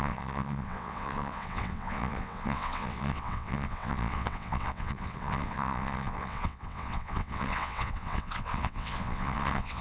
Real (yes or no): no